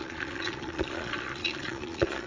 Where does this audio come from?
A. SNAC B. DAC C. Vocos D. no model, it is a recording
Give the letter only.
C